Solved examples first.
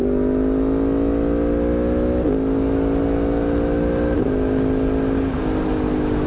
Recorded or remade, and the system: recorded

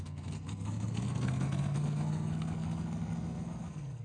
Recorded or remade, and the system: remade, codec, SNAC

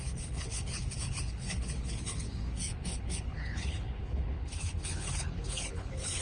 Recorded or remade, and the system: remade, codec, HILCodec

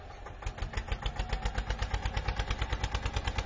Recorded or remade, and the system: recorded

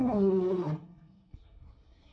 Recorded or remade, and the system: remade, codec, SNAC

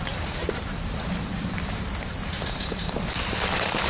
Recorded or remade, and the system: remade, vocoder, BigVGAN v2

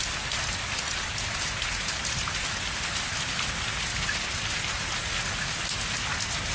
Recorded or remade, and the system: recorded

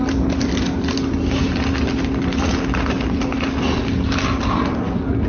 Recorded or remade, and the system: recorded